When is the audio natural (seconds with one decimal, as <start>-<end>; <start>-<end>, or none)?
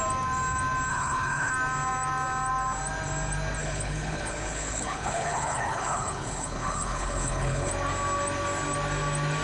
0.0-0.9; 1.5-3.6; 7.7-9.4